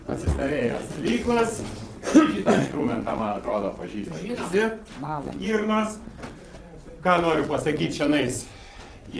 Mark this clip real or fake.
fake